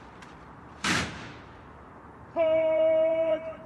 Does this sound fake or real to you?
fake